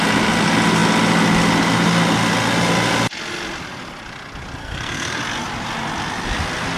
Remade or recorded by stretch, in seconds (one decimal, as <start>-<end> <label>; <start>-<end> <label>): 0.0-4.6 recorded; 4.6-5.2 remade; 5.2-6.8 recorded